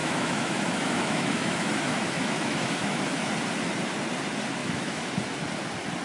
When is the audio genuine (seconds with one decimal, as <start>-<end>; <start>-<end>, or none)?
3.3-4.6; 5.2-6.0